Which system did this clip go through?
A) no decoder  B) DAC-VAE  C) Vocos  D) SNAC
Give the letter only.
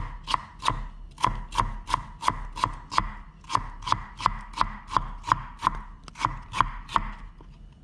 A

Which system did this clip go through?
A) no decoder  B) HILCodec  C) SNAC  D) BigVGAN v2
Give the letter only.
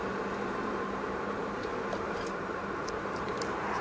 D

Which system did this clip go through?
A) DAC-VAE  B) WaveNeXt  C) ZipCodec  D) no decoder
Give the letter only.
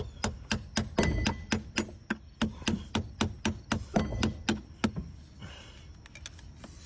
D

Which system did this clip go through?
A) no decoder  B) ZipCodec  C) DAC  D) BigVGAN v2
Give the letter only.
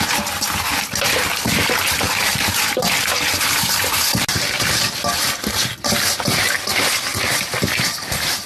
A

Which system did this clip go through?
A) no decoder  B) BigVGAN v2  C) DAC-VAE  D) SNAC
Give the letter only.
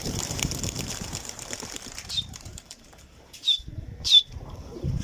B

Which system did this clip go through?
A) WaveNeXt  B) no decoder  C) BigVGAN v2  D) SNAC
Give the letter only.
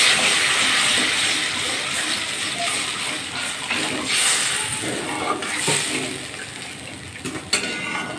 B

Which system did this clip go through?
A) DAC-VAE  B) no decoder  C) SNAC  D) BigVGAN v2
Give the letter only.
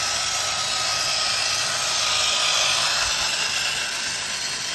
B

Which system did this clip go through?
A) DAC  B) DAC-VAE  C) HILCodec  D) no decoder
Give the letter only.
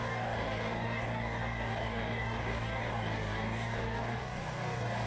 A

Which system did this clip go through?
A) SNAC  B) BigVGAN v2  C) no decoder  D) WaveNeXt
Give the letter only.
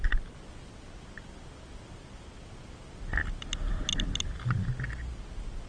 C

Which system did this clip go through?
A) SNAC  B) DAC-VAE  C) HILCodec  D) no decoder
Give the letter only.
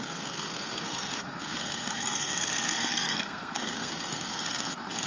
A